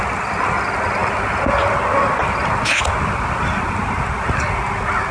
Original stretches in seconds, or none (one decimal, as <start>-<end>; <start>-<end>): 0.0-5.1